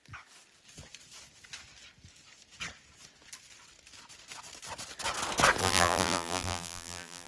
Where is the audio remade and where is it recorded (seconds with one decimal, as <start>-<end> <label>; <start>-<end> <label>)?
0.0-5.6 recorded; 5.6-7.3 remade